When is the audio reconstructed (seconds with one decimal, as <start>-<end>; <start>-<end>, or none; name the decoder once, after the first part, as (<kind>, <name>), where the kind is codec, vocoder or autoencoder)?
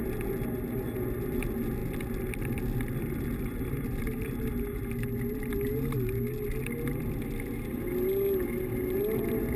none